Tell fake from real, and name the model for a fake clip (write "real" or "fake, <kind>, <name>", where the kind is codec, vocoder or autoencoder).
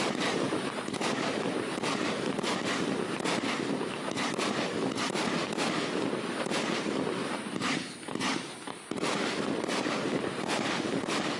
fake, vocoder, BigVGAN v2